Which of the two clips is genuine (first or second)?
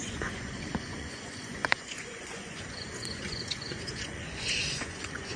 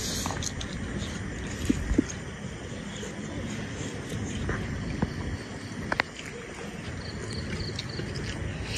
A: second